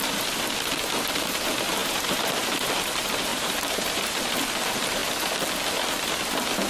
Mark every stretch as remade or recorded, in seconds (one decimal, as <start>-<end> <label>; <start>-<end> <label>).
0.0-1.8 recorded; 1.8-2.7 remade; 2.7-3.3 recorded; 3.3-4.2 remade; 4.2-6.7 recorded